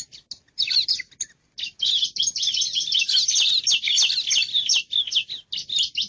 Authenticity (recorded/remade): recorded